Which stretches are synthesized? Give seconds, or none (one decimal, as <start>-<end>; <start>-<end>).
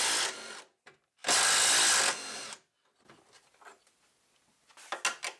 none